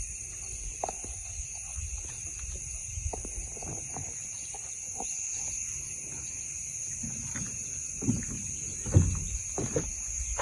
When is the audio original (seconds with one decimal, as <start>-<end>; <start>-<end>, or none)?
0.0-10.4